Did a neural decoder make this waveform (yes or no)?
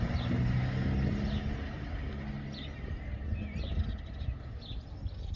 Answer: no